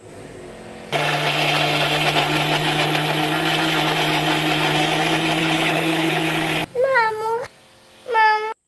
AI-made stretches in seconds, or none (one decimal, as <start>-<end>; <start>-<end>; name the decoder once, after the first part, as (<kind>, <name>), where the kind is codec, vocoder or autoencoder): 5.4-6.1 (codec, HILCodec)

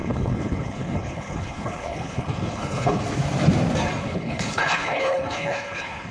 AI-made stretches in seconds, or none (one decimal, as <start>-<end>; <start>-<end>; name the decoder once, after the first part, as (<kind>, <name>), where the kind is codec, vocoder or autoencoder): 0.0-3.0 (codec, HILCodec); 4.0-6.1

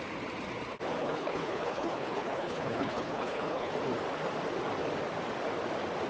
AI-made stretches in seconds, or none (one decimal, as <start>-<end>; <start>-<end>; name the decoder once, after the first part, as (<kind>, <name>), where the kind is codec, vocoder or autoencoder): 1.0-3.7 (codec, HILCodec)

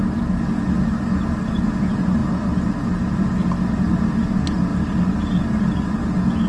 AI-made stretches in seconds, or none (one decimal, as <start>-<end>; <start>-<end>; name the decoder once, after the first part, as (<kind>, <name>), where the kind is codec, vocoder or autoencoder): none